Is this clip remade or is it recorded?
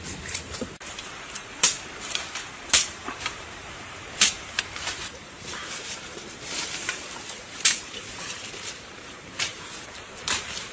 remade